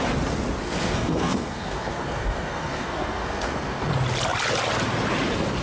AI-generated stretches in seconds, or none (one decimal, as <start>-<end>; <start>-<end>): 0.6-3.9